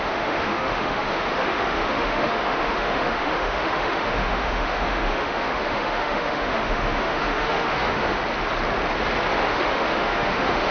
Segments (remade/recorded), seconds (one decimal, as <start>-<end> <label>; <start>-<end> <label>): 0.0-8.2 remade; 8.2-9.5 recorded; 9.5-10.7 remade